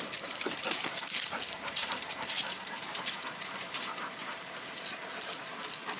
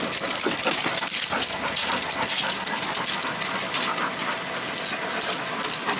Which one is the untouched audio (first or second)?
second